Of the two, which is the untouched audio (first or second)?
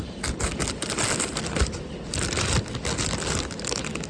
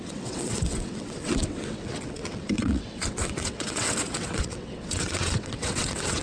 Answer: first